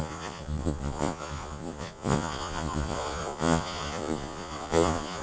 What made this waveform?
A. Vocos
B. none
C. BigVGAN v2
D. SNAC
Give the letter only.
A